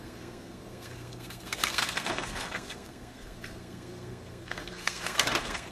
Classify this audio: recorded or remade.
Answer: remade